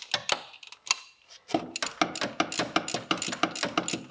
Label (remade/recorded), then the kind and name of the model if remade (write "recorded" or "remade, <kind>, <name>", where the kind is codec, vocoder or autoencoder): recorded